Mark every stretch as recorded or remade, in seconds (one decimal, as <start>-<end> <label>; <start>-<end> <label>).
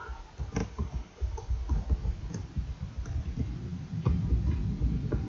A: 0.0-0.6 recorded; 0.6-1.6 remade; 1.6-5.3 recorded